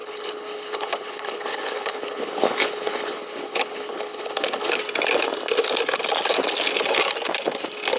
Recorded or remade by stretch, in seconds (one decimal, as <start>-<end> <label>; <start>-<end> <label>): 0.0-4.8 remade; 4.8-8.0 recorded